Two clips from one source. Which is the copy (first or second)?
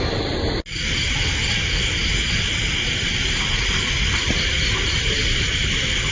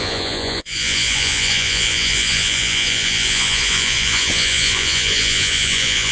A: second